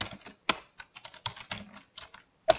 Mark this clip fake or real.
real